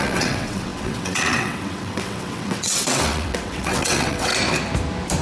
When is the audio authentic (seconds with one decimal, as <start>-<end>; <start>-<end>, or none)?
4.3-5.2